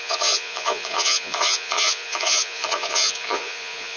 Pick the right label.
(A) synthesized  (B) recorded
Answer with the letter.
A